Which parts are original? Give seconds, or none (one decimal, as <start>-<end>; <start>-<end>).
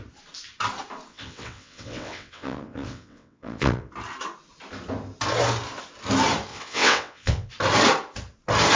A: 0.0-1.1; 3.9-6.5; 7.5-8.8